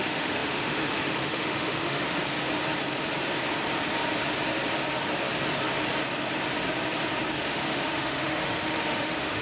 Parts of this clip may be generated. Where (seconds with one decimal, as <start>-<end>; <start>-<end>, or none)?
0.0-2.2; 7.4-9.4